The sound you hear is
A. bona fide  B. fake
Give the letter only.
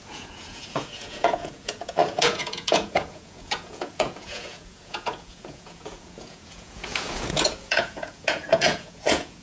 B